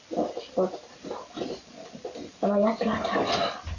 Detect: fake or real real